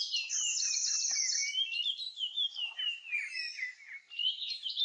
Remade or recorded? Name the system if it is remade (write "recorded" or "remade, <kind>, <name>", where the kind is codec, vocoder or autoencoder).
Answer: recorded